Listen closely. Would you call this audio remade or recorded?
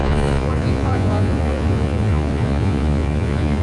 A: remade